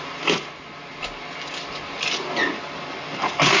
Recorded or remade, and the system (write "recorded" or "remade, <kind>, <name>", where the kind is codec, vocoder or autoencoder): recorded